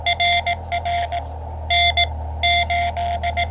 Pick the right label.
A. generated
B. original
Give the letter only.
B